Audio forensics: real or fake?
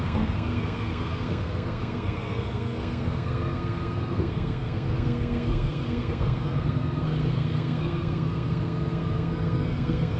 fake